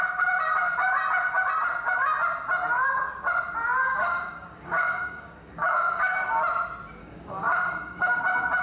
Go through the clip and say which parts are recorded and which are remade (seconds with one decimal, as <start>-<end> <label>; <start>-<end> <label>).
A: 0.0-3.8 recorded; 3.8-6.4 remade; 6.4-7.0 recorded; 7.0-8.2 remade; 8.2-8.6 recorded

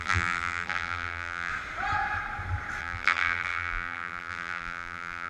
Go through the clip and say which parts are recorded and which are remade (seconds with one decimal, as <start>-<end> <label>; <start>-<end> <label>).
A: 0.0-1.5 remade; 1.5-2.8 recorded; 2.8-5.3 remade

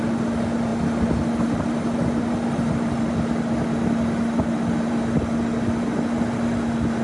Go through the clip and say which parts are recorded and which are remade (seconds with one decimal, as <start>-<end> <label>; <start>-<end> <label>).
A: 0.0-7.0 recorded

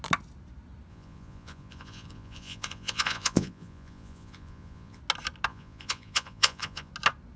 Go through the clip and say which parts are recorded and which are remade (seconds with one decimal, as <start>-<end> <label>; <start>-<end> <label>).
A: 0.0-0.9 recorded; 0.9-5.0 remade; 5.0-5.5 recorded; 5.5-6.9 remade; 6.9-7.4 recorded

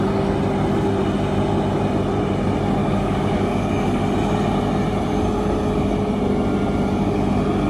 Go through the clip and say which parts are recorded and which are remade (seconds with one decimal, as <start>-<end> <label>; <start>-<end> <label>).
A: 0.0-2.8 recorded; 2.8-4.0 remade; 4.0-7.7 recorded

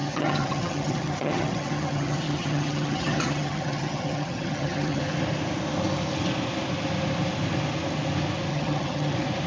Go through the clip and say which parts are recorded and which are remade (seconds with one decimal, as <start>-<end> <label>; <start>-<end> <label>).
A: 0.0-5.0 remade; 5.0-8.5 recorded; 8.5-9.1 remade; 9.1-9.5 recorded

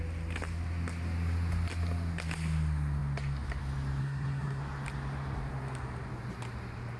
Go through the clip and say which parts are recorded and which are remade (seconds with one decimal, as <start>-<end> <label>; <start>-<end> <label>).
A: 0.0-4.0 recorded; 4.0-4.6 remade; 4.6-7.0 recorded